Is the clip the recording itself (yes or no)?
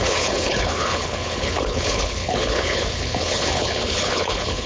no